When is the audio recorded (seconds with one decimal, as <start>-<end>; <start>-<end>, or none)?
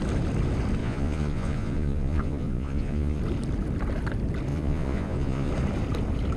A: 0.0-0.8; 3.2-4.5; 5.5-6.4